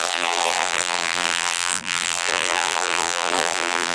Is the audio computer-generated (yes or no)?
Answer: yes